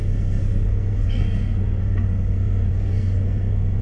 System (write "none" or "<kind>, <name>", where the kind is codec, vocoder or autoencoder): codec, SNAC